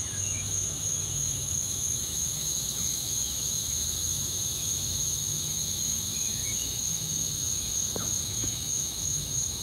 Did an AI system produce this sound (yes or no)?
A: yes